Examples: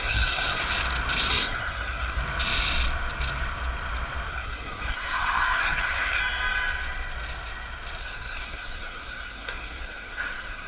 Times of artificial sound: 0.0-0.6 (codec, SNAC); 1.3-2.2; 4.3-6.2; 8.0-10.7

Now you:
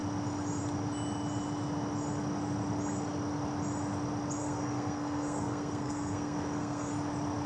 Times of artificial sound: 4.4-6.9 (codec, SNAC)

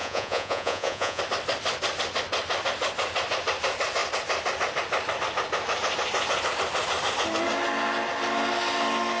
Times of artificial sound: 0.0-1.2 (vocoder, Vocos)

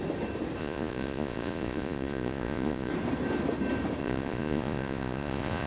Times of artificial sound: 0.6-2.9 (vocoder, Vocos); 4.0-5.7

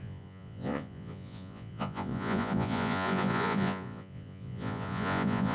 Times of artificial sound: 0.0-5.5 (vocoder, Vocos)

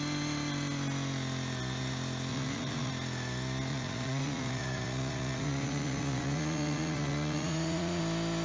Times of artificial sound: 2.3-2.9 (vocoder, Vocos); 3.7-8.0

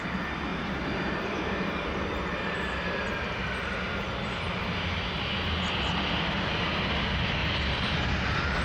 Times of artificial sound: 0.5-1.9 (vocoder, BigVGAN v2); 7.4-8.1

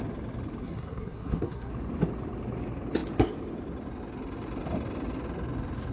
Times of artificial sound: 0.6-1.7 (codec, SNAC)